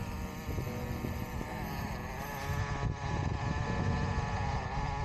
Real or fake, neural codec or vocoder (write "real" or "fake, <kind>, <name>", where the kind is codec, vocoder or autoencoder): real